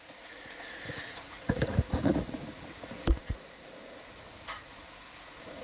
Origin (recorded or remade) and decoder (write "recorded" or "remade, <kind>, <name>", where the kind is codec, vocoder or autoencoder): remade, vocoder, Vocos